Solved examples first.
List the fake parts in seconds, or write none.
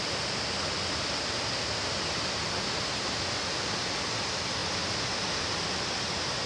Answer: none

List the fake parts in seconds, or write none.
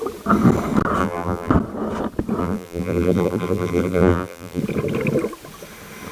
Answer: 1.0-1.5 (vocoder, BigVGAN v2); 2.4-4.6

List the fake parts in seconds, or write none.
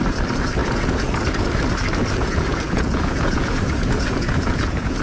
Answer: 0.6-1.4 (vocoder, Vocos); 2.0-5.0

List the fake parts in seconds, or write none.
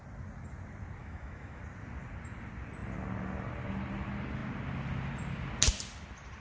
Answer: 1.0-1.6 (autoencoder, DAC-VAE)